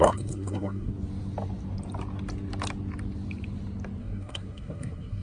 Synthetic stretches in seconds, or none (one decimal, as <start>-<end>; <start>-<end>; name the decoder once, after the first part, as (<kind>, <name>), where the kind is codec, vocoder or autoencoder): 0.0-0.9 (codec, SNAC); 4.0-5.2